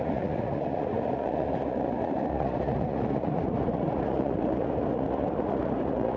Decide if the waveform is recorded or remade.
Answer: remade